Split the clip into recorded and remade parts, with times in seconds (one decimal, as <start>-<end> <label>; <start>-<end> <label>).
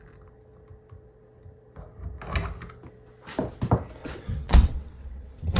0.0-4.0 recorded; 4.0-5.6 remade